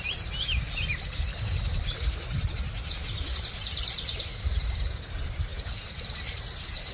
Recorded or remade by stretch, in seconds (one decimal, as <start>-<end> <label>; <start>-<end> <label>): 0.0-6.9 recorded

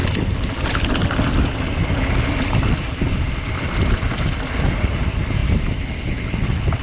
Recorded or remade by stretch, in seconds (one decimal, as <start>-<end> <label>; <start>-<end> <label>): 0.0-1.9 remade; 1.9-6.8 recorded

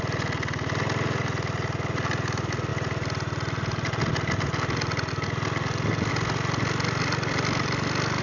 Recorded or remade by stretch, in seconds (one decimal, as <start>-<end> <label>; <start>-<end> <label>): 0.0-8.2 recorded

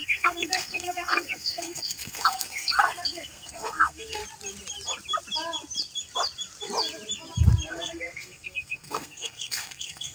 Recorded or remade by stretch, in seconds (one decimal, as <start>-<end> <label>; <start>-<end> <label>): 0.0-4.2 remade; 4.2-7.7 recorded; 7.7-10.1 remade

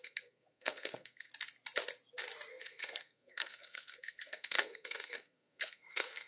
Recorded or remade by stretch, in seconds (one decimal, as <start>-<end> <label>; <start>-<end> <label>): 0.0-1.3 remade; 1.3-2.5 recorded; 2.5-6.3 remade

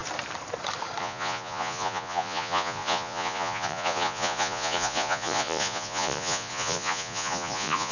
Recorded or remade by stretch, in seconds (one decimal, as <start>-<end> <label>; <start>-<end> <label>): 0.0-1.0 recorded; 1.0-7.9 remade

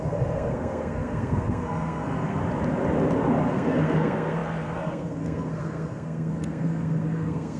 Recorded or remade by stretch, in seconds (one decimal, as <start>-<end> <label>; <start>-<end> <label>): 0.0-2.4 remade; 2.4-3.5 recorded; 3.5-7.6 remade

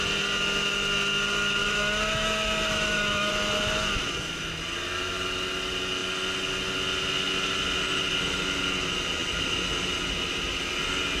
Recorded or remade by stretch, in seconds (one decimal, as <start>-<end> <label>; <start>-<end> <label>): 0.0-1.6 recorded; 1.6-3.3 remade; 3.3-11.2 recorded